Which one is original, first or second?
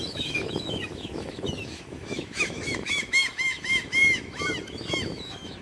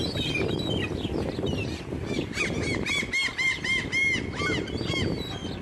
second